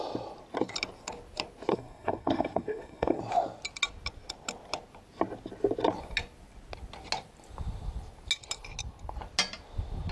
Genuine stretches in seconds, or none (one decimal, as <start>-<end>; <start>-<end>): 0.0-1.7; 3.2-10.1